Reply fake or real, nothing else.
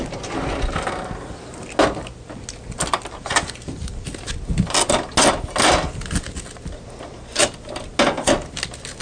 real